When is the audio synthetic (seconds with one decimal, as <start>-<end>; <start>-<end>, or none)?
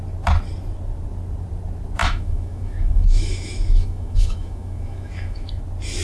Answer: 2.0-5.6